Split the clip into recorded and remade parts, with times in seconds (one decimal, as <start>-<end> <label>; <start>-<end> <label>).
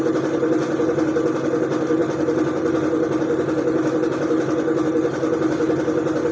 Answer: 0.0-6.3 recorded